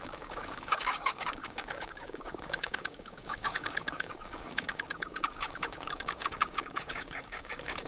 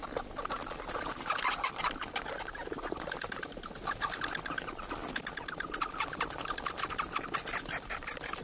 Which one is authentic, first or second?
second